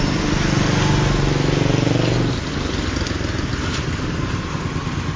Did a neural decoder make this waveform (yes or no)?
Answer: no